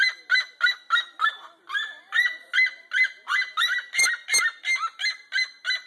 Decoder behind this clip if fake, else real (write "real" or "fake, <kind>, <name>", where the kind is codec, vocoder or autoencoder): real